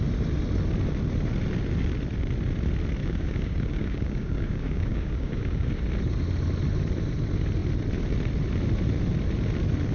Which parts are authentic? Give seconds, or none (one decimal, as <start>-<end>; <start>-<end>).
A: 0.0-3.0; 5.7-9.9